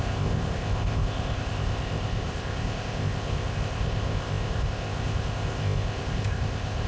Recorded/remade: remade